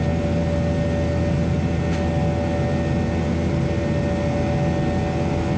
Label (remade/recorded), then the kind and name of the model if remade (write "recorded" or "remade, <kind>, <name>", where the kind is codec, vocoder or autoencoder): recorded